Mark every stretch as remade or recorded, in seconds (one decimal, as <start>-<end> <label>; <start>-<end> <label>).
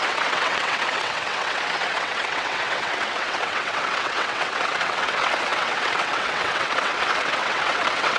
0.0-8.2 remade